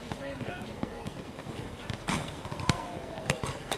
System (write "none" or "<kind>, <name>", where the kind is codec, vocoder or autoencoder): codec, SNAC